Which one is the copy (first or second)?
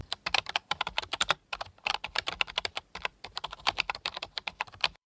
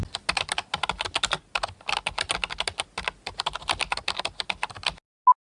first